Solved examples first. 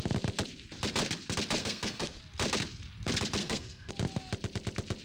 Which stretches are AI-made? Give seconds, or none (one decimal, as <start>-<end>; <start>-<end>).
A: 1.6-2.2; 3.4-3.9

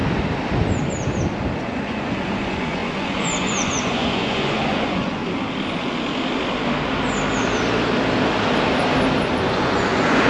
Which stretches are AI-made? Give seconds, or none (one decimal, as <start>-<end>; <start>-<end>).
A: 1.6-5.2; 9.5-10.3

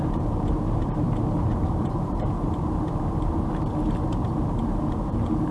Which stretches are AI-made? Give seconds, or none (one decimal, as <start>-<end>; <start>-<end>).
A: 0.0-5.5

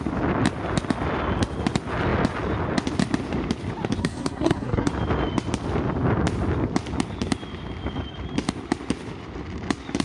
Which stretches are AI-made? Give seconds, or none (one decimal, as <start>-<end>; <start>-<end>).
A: 4.0-4.9